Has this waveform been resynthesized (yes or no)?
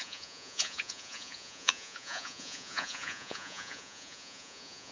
yes